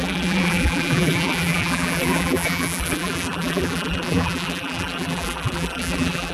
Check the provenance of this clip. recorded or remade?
remade